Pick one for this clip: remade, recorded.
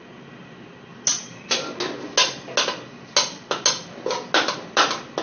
recorded